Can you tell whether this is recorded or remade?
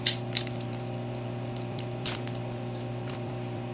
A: remade